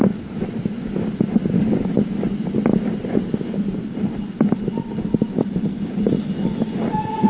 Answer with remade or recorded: recorded